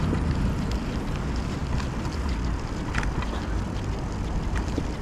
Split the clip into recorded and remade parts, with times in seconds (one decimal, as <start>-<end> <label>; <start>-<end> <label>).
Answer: 0.0-5.0 recorded